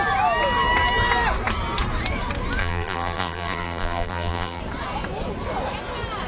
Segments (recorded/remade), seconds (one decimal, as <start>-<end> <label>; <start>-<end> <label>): 0.0-2.6 recorded; 2.6-4.6 remade; 4.6-6.3 recorded